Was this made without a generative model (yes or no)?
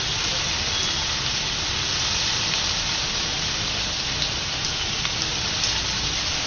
yes